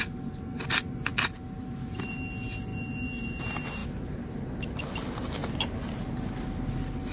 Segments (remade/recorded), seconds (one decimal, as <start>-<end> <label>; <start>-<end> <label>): 0.0-7.1 recorded